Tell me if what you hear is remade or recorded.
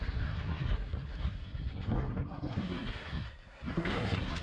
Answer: remade